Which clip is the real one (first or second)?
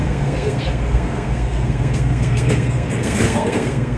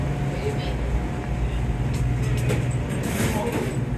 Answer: second